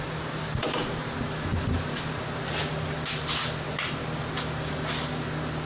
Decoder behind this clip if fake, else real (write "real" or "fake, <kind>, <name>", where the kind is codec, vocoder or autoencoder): real